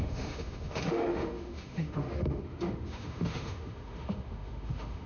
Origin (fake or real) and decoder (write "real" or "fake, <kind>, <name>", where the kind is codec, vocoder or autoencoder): fake, autoencoder, DAC-VAE